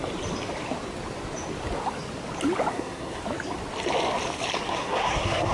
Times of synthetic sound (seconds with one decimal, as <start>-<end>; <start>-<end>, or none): 2.7-3.2; 4.7-5.5